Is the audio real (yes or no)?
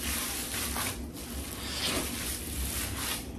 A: yes